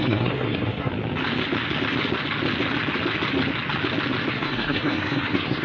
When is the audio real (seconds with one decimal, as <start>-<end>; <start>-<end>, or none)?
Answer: 0.9-4.3